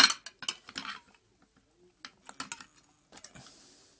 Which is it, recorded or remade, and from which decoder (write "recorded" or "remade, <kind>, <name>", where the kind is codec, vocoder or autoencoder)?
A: recorded